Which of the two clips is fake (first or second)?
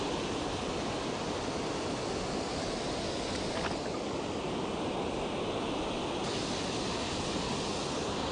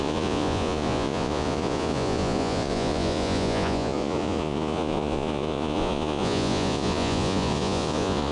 second